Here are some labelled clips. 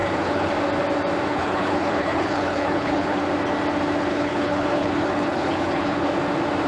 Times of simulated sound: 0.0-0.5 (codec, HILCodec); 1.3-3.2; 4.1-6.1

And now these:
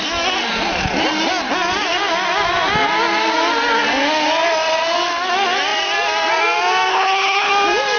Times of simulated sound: 6.9-7.5 (codec, HILCodec)

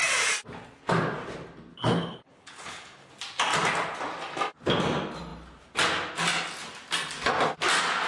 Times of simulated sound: 1.7-3.1 (codec, HILCodec)

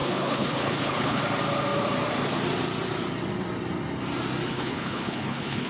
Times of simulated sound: 0.0-1.2 (codec, HILCodec); 4.5-5.7

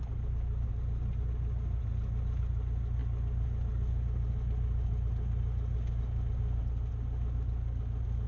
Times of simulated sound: none

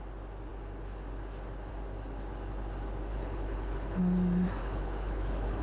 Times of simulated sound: 3.1-4.0 (codec, HILCodec); 4.6-5.6

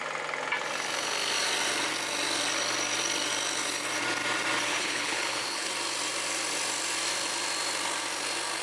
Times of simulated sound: 4.7-5.7 (codec, HILCodec)